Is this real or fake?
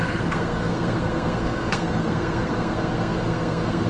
fake